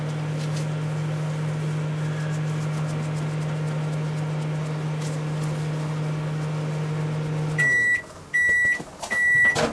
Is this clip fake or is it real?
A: real